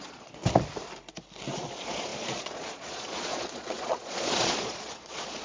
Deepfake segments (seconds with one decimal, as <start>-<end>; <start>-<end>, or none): 0.0-0.4; 1.5-5.4